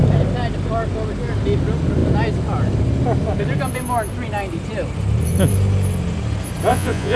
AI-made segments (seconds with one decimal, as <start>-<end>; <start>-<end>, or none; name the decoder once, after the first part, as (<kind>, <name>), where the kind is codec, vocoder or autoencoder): 6.7-7.2 (vocoder, Vocos)